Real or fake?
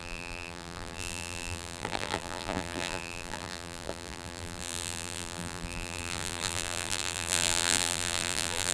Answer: fake